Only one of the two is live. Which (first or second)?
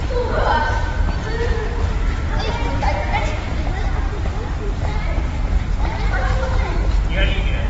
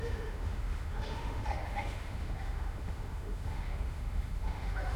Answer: first